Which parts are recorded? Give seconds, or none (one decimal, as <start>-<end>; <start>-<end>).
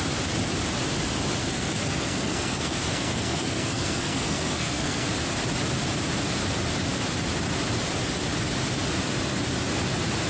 0.0-1.4; 5.1-10.3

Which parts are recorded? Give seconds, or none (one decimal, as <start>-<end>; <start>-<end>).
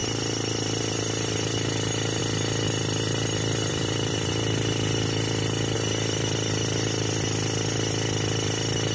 0.0-3.7; 4.3-8.9